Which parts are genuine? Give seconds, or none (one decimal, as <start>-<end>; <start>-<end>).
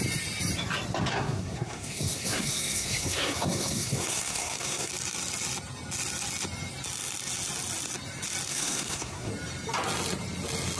0.0-1.1; 4.9-8.5; 9.3-10.8